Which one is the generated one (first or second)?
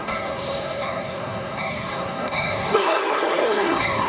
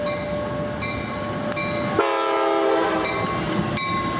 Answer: first